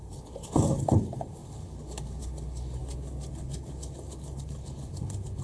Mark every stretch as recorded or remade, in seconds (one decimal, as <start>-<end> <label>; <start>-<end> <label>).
0.0-2.8 remade; 2.8-3.3 recorded; 3.3-5.4 remade